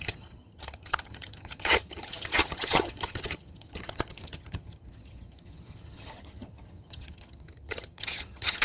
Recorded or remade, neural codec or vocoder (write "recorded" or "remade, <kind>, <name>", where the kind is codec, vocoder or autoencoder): remade, vocoder, HiFi-GAN